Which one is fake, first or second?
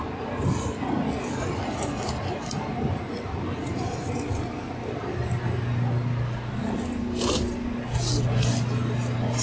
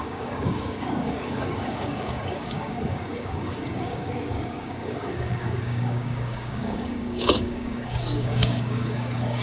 second